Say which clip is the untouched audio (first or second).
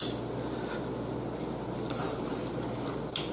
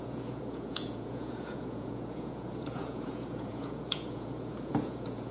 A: first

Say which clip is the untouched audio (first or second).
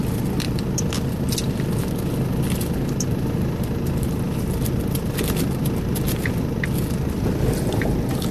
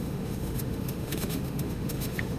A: first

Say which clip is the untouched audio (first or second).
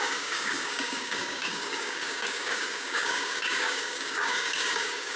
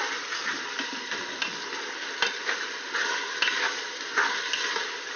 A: second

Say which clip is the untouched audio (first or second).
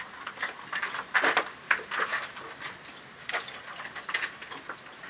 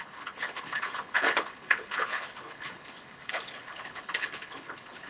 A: first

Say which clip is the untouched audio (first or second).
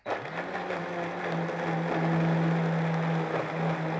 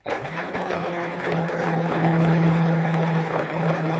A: first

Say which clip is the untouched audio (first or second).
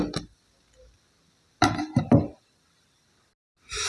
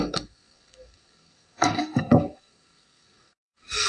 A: first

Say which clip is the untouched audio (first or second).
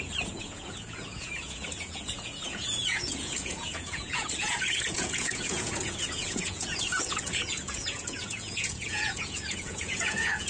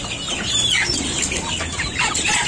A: second